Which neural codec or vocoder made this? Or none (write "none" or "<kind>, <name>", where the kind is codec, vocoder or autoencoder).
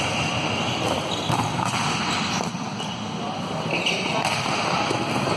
none